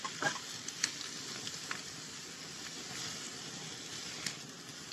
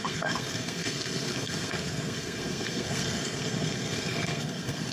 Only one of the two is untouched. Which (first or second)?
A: first